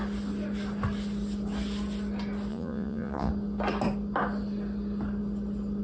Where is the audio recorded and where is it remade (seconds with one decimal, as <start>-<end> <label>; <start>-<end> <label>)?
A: 0.0-2.5 recorded; 2.5-3.3 remade; 3.3-5.8 recorded